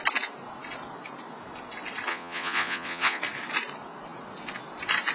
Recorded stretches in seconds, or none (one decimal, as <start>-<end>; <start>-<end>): 0.0-2.1; 3.2-5.1